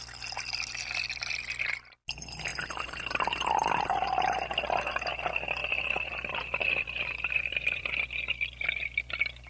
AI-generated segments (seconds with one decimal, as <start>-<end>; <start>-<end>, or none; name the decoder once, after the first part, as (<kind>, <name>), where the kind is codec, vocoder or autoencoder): 2.5-3.8 (vocoder, BigVGAN v2); 5.6-9.1